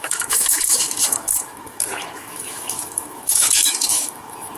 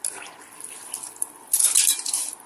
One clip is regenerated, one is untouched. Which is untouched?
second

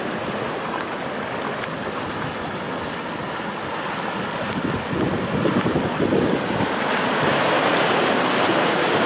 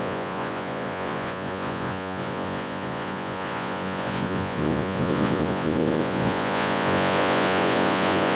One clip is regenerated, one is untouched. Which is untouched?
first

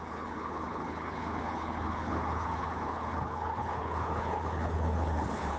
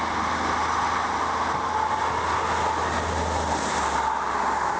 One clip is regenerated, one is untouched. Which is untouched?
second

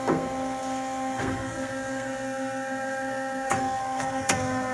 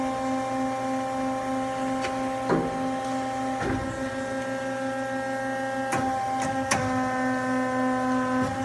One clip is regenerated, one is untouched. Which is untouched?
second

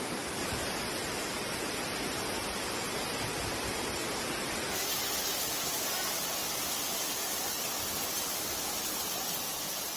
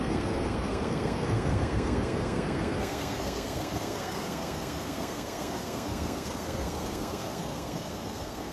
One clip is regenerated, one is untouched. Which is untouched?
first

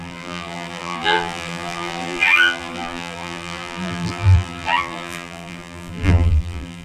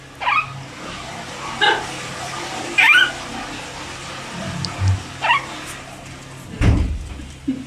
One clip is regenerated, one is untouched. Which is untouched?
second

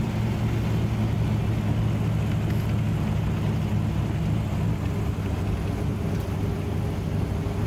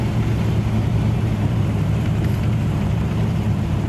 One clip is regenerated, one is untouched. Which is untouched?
first